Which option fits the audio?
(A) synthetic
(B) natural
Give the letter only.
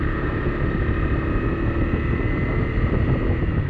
B